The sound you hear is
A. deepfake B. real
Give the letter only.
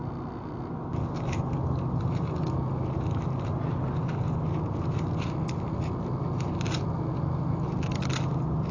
B